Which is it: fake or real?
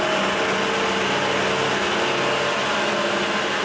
real